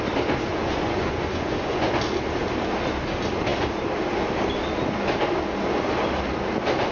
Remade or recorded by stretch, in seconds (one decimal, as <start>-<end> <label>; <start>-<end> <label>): 0.0-0.5 recorded; 0.5-1.9 remade; 1.9-6.9 recorded